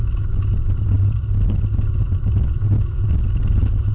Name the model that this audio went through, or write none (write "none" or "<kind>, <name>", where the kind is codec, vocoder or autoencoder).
none